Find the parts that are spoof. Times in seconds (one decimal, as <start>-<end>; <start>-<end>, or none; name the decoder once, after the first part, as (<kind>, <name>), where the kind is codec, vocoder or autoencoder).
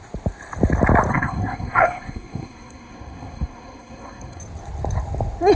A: 1.1-4.4 (codec, SNAC)